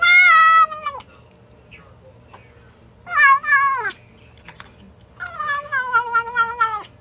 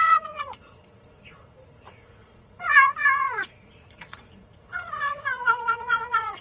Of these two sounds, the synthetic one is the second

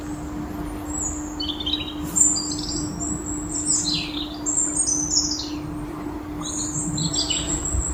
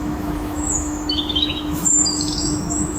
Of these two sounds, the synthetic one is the second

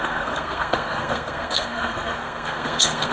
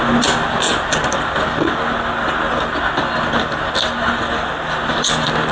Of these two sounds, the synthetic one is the first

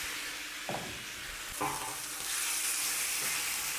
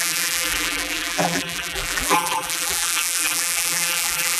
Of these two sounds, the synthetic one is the second